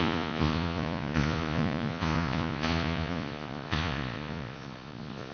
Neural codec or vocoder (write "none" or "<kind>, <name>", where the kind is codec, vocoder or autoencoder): vocoder, Vocos